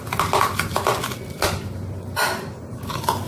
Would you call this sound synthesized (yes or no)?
no